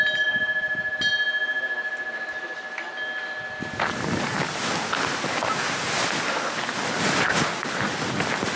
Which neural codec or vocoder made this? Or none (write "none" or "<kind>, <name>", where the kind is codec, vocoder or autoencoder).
none